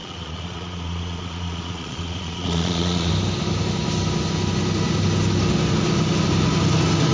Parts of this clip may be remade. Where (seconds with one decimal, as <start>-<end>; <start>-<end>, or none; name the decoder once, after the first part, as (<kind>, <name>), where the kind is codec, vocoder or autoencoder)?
0.0-3.1 (vocoder, Vocos)